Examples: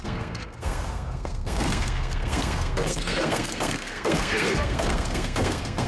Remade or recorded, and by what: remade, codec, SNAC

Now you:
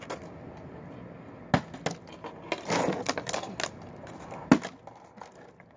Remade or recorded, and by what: recorded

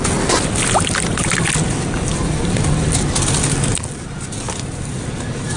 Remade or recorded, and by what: recorded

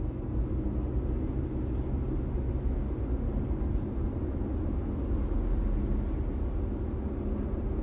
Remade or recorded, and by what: recorded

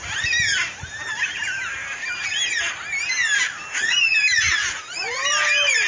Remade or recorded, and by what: recorded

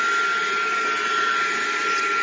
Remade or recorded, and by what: recorded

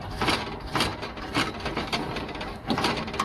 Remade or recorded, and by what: remade, vocoder, BigVGAN v2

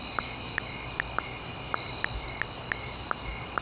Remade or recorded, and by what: recorded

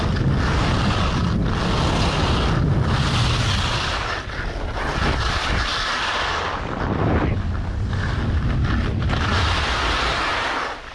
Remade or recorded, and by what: recorded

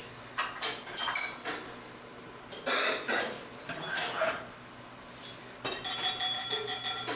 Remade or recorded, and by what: recorded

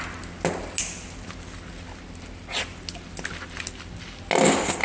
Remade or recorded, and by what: recorded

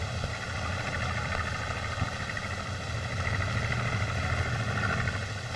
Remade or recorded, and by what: recorded